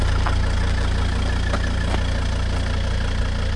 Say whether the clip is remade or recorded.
recorded